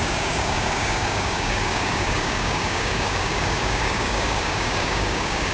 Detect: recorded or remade remade